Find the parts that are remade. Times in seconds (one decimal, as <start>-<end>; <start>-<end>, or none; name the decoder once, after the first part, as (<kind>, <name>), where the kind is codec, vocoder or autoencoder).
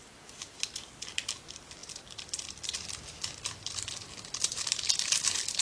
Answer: none